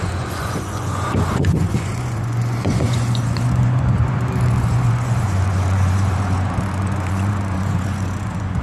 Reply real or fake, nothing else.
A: fake